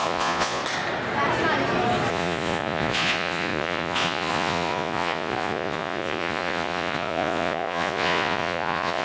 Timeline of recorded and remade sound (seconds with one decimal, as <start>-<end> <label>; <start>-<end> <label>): 0.0-0.6 remade; 0.6-2.1 recorded; 2.1-9.0 remade